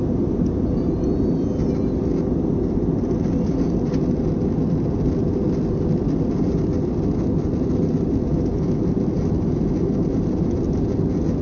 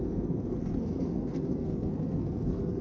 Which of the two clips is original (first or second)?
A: first